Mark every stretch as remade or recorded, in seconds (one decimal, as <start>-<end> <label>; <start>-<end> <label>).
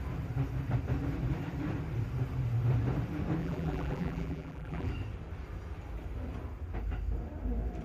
0.0-3.4 recorded; 3.4-4.9 remade; 4.9-7.8 recorded